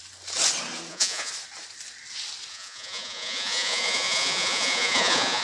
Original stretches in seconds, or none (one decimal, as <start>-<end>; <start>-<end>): 0.0-0.9; 1.3-2.5